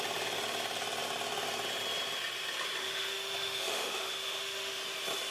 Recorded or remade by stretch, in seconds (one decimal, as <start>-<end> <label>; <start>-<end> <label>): 0.0-2.8 recorded; 2.8-4.8 remade; 4.8-5.3 recorded

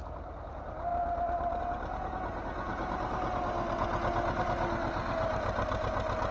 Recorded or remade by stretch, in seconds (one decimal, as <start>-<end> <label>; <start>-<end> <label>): 0.0-6.3 recorded

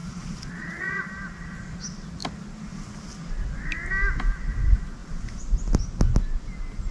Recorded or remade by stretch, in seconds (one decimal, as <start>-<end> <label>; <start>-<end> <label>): 0.0-1.1 remade; 1.1-6.9 recorded

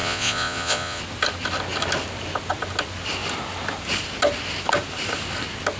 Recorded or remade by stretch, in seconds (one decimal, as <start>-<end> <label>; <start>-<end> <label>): 0.0-1.0 remade; 1.0-5.8 recorded

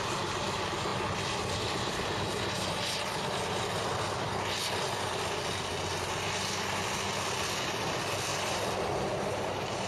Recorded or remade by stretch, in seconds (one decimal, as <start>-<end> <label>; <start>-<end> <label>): 0.0-9.9 recorded

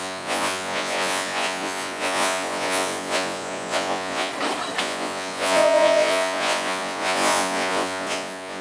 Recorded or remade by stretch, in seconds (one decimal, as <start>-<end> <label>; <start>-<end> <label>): 0.0-4.3 remade; 4.3-4.8 recorded; 4.8-8.6 remade